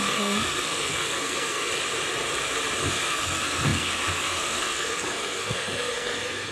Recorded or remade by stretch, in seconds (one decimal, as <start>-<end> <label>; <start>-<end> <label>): 0.0-1.7 remade; 1.7-2.8 recorded; 2.8-6.5 remade